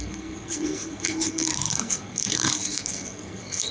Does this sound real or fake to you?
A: fake